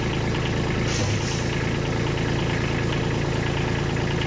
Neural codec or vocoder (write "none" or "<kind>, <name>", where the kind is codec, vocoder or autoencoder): none